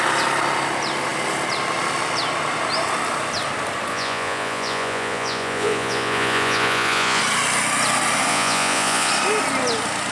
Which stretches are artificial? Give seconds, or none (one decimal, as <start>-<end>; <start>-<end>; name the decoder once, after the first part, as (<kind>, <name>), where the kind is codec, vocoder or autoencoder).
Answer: 3.9-7.2 (vocoder, Vocos); 8.3-9.1